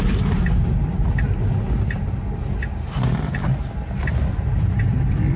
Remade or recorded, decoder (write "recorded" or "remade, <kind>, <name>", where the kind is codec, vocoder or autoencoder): recorded